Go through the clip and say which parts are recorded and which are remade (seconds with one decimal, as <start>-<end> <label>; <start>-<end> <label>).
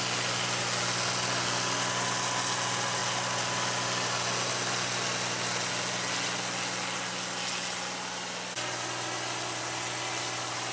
0.0-10.7 recorded